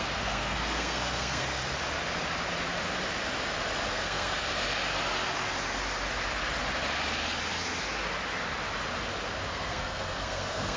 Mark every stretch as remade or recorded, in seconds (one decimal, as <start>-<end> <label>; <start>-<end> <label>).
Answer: 0.0-1.6 remade; 1.6-3.9 recorded; 3.9-4.5 remade; 4.5-9.5 recorded; 9.5-10.8 remade